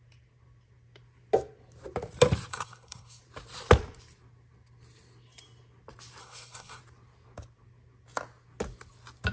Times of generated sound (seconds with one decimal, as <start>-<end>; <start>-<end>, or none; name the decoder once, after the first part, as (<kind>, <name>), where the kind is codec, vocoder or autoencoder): 2.5-3.2 (codec, SNAC); 6.2-6.8